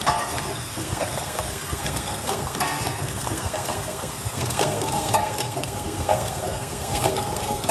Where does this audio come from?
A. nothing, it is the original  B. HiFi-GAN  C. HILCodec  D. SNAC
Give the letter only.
D